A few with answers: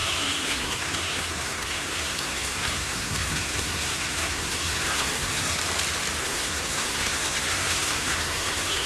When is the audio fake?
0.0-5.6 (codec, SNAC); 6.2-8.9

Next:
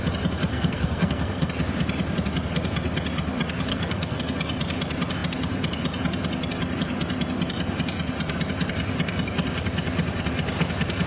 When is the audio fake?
0.5-1.5 (codec, SNAC); 3.7-4.2